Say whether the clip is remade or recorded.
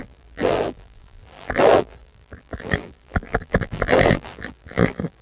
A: remade